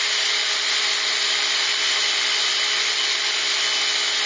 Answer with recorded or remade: recorded